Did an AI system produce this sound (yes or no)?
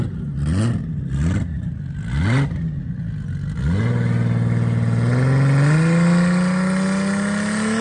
no